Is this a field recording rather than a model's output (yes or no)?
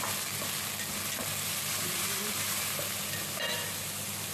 yes